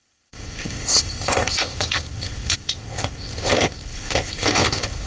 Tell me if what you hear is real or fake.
fake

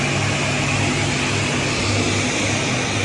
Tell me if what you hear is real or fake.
real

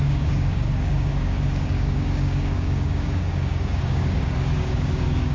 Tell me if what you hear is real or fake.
fake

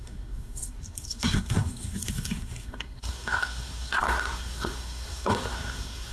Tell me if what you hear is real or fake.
fake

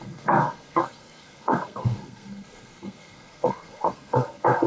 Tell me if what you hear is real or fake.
fake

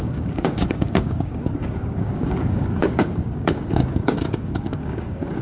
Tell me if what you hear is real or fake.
fake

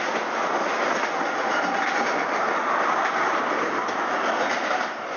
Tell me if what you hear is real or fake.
real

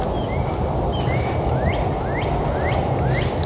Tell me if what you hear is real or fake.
real